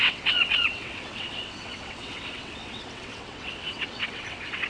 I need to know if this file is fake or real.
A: fake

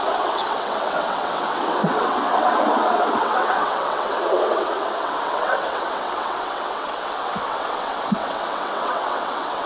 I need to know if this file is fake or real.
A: fake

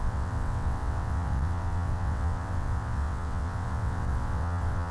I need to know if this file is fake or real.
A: fake